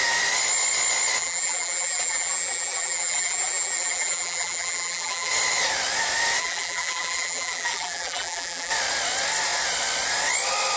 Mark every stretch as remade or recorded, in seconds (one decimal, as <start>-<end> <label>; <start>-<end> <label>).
0.0-1.2 recorded; 1.2-5.3 remade; 5.3-6.4 recorded; 6.4-8.7 remade; 8.7-10.8 recorded